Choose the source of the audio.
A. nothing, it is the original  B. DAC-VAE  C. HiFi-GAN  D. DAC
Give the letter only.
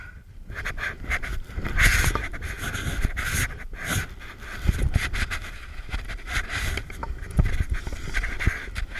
A